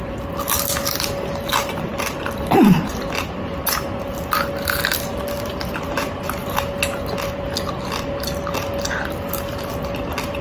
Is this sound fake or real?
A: real